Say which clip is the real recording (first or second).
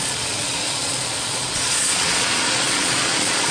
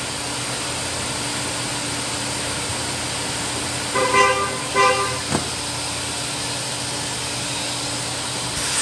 second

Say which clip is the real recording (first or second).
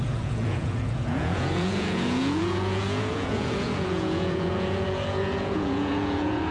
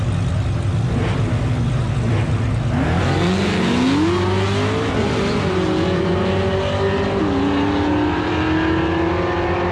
second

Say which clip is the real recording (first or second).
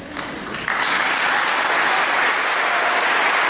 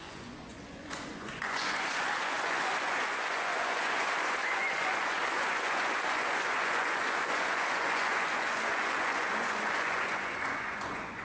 first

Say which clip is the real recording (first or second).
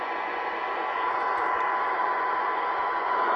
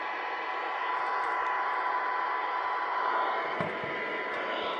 second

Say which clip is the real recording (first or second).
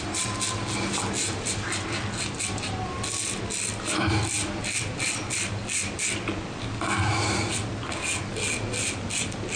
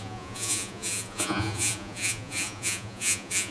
first